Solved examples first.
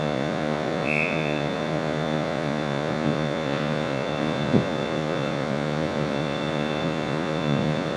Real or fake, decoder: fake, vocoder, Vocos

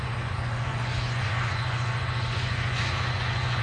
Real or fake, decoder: fake, vocoder, Vocos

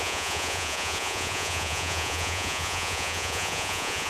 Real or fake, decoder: fake, vocoder, Vocos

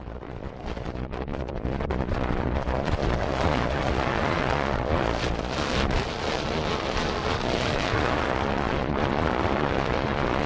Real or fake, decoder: fake, vocoder, Vocos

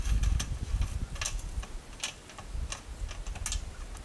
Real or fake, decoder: real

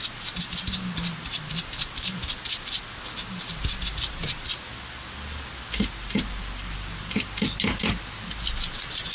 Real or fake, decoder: real